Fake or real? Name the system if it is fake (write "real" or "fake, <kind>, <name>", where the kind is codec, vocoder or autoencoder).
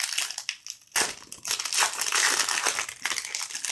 real